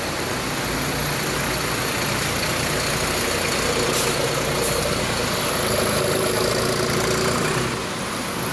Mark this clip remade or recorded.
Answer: recorded